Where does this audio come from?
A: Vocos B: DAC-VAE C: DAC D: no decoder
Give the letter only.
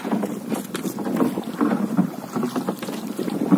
D